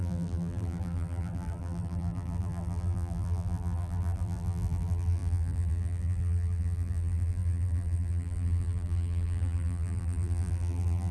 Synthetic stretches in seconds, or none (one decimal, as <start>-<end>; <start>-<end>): 0.0-11.1